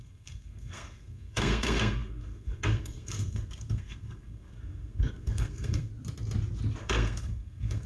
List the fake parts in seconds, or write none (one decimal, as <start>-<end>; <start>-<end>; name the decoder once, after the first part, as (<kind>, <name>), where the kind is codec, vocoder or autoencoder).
0.0-5.9 (codec, SNAC); 6.8-7.9